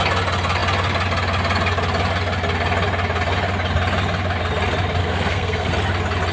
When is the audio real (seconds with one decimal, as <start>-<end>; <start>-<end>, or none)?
0.0-5.0; 5.7-6.3